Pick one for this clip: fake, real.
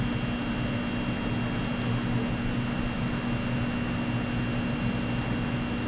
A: real